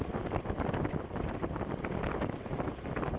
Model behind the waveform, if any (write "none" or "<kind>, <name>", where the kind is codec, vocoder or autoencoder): none